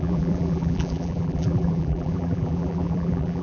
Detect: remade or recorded remade